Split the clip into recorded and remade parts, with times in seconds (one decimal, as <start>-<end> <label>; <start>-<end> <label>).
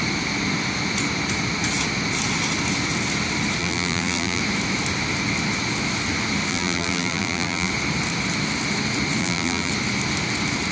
0.0-3.6 recorded; 3.6-4.4 remade; 4.4-6.5 recorded; 6.5-7.7 remade; 7.7-9.2 recorded; 9.2-9.7 remade; 9.7-10.7 recorded